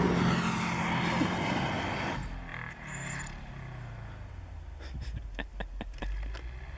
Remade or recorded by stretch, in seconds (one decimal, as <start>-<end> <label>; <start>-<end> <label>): 0.0-6.8 recorded